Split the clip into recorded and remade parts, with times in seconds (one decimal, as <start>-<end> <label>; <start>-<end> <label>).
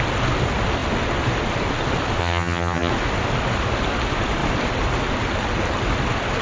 0.0-2.2 recorded; 2.2-2.9 remade; 2.9-6.4 recorded